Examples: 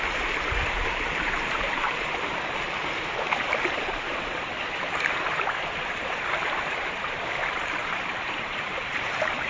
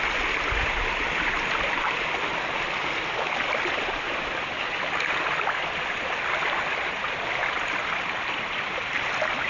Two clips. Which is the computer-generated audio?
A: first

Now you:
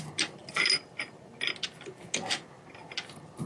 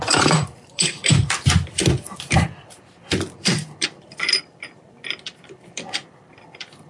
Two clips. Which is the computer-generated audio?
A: second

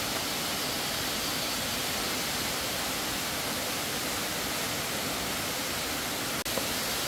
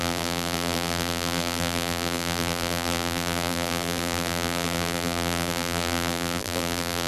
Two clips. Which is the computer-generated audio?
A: second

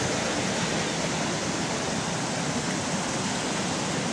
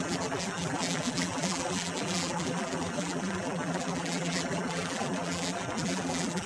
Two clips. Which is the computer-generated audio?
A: second